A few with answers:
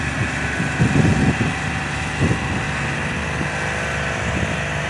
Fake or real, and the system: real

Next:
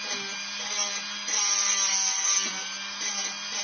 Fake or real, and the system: real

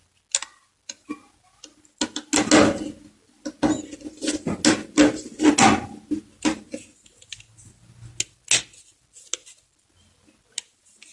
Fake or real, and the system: real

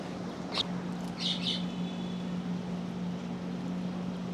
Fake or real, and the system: real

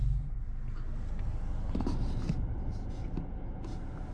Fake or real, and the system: real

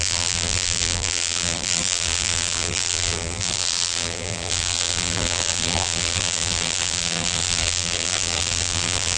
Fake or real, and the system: fake, vocoder, BigVGAN v2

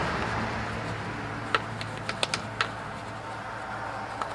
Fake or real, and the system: real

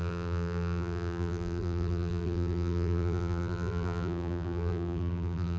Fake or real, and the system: fake, vocoder, BigVGAN v2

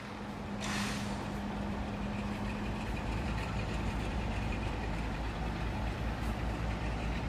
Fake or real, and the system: real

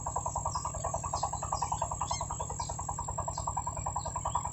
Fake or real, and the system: real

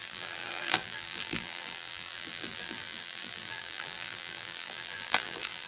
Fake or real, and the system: fake, vocoder, BigVGAN v2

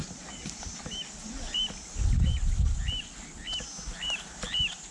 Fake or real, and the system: real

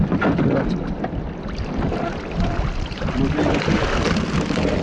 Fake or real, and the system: real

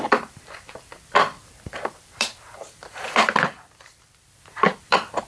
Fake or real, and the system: fake, vocoder, BigVGAN v2